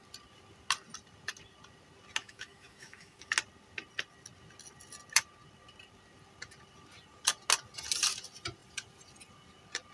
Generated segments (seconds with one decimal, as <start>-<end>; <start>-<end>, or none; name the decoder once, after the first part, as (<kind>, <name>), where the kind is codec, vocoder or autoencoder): 2.2-3.3 (autoencoder, DAC-VAE)